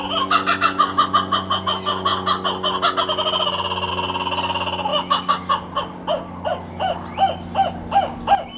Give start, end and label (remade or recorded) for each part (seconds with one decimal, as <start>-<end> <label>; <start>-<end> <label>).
0.0-8.6 recorded